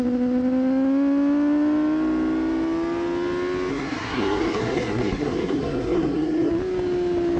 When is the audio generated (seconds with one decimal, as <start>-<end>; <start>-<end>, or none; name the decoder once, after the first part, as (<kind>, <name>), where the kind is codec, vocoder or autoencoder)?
3.7-6.5 (codec, SNAC)